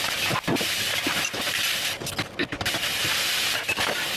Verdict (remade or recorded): recorded